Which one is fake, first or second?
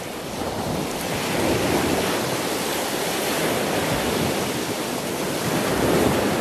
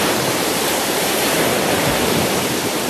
second